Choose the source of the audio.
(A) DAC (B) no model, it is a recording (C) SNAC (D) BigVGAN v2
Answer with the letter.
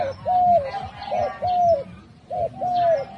B